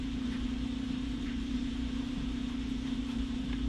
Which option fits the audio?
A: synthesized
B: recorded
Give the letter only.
A